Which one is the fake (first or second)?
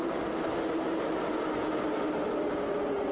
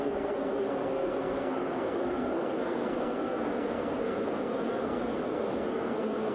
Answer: second